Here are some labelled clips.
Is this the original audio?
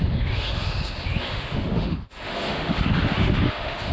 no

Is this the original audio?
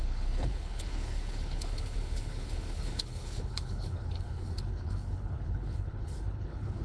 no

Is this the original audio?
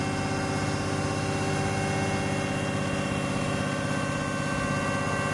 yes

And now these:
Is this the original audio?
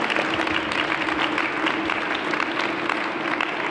yes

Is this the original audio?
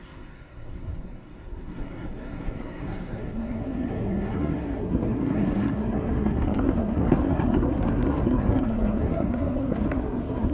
no